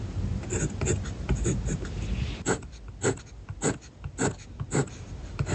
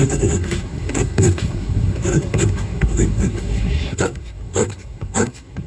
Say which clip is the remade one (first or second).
second